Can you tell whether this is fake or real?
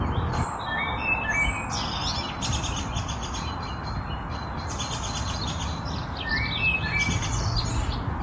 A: real